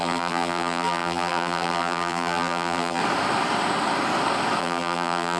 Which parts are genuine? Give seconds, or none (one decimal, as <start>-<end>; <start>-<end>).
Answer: 3.0-4.6